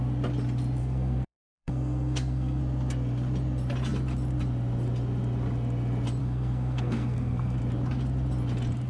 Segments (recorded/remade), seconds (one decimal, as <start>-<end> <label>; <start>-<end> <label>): 0.0-0.8 recorded; 0.8-2.6 remade; 2.6-6.2 recorded; 6.2-7.6 remade; 7.6-8.9 recorded